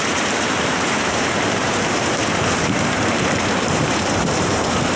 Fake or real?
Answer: fake